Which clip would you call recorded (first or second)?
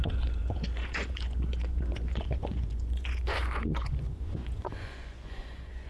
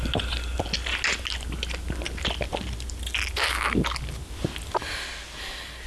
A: second